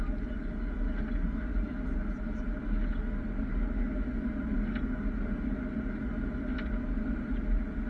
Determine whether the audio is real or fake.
real